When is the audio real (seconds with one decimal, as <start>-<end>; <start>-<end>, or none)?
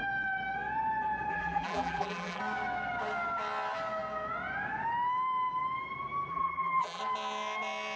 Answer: 0.0-1.3; 2.4-6.3; 7.0-8.0